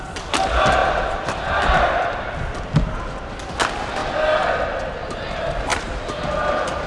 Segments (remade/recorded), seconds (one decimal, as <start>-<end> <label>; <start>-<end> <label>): 0.0-0.8 recorded; 0.8-3.0 remade; 3.0-5.7 recorded; 5.7-6.9 remade